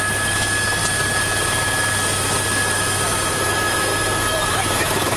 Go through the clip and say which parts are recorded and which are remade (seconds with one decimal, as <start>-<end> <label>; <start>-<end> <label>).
0.0-0.8 remade; 0.8-3.3 recorded; 3.3-3.9 remade; 3.9-4.5 recorded; 4.5-5.2 remade

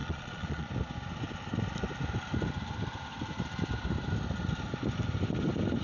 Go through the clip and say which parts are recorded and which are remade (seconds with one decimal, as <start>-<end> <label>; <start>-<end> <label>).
0.0-0.7 remade; 0.7-5.8 recorded

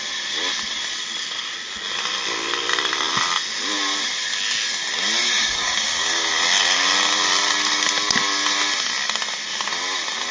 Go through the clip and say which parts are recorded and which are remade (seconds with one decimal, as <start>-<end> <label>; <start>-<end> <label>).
0.0-5.2 recorded; 5.2-6.3 remade; 6.3-10.3 recorded

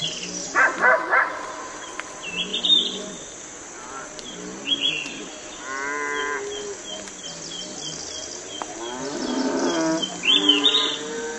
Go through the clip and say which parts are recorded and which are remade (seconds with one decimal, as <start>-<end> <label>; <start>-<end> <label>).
0.0-11.4 recorded

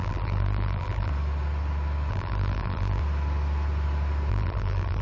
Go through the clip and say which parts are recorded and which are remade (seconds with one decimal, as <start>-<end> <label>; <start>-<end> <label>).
0.0-1.1 remade; 1.1-2.1 recorded; 2.1-3.0 remade; 3.0-4.3 recorded; 4.3-5.0 remade

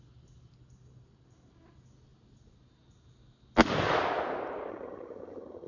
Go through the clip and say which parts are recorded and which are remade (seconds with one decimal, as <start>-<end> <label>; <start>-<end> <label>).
0.0-4.7 recorded; 4.7-5.7 remade